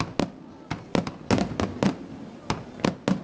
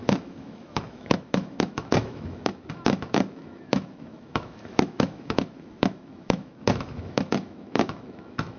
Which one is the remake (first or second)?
second